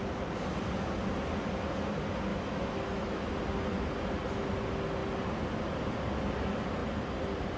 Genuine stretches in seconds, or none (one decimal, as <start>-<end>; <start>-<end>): 0.0-2.3; 3.3-7.6